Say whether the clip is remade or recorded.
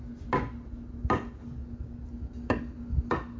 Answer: recorded